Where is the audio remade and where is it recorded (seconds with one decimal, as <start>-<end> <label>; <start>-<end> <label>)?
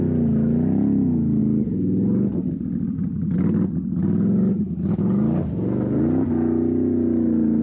0.0-7.6 recorded